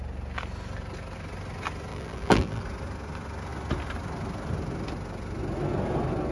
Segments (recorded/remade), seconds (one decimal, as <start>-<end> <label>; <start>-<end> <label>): 0.0-1.9 recorded; 1.9-2.6 remade; 2.6-6.3 recorded